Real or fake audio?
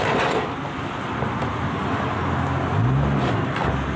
real